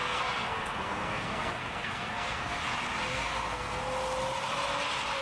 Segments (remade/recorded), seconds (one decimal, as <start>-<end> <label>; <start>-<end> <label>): 0.0-2.6 remade; 2.6-3.1 recorded; 3.1-3.8 remade; 3.8-5.2 recorded